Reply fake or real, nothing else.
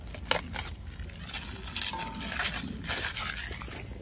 real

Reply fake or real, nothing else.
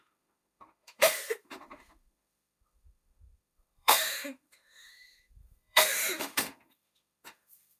fake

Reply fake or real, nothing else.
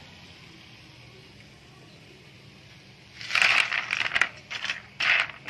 real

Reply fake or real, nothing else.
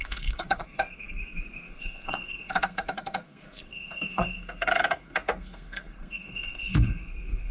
fake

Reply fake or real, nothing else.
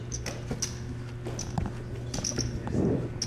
real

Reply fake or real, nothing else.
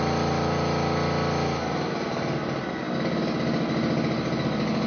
real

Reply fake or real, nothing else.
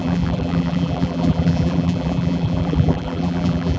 fake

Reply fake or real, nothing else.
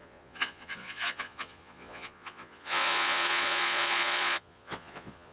fake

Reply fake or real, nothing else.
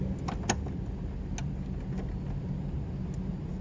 real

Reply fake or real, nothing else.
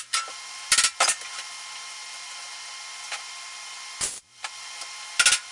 real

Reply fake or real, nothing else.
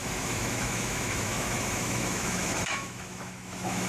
fake